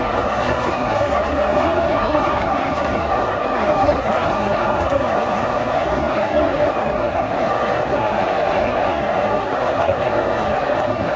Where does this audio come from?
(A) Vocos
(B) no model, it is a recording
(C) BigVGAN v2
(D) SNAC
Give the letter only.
D